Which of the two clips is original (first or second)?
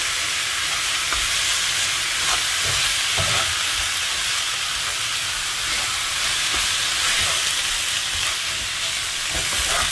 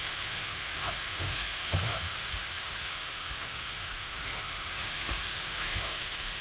first